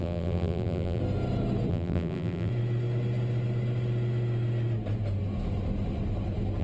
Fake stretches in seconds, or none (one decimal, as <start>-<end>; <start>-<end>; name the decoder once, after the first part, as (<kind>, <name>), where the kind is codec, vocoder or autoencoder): 0.0-1.0 (vocoder, BigVGAN v2); 1.7-2.5